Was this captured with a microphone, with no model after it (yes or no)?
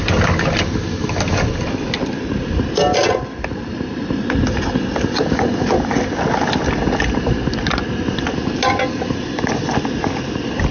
yes